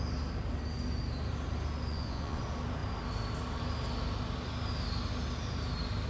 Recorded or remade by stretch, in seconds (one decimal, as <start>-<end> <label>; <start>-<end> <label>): 0.0-1.9 recorded; 1.9-2.4 remade; 2.4-6.1 recorded